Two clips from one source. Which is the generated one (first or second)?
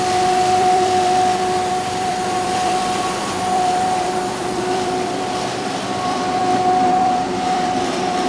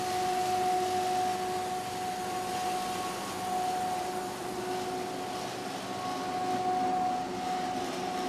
first